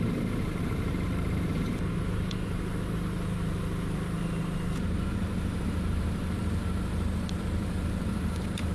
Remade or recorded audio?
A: remade